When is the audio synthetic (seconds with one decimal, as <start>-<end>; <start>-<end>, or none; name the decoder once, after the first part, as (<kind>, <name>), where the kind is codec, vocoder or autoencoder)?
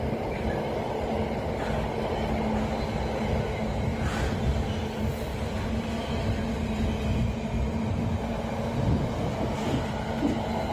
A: none